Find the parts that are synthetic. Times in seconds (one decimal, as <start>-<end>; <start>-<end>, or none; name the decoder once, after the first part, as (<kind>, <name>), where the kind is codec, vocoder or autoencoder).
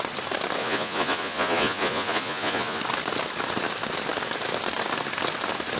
0.6-2.8 (vocoder, Vocos)